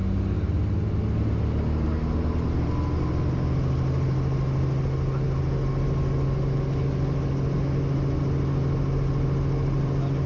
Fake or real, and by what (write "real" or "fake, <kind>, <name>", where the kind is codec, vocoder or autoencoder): real